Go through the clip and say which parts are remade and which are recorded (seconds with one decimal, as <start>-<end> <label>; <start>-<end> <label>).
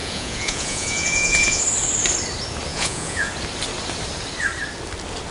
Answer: 0.0-1.6 remade; 1.6-2.7 recorded; 2.7-3.3 remade; 3.3-5.3 recorded